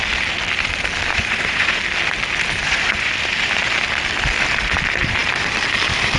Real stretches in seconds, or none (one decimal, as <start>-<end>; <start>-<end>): 0.0-1.1; 1.8-2.6; 3.1-6.2